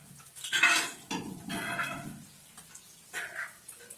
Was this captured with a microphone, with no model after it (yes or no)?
yes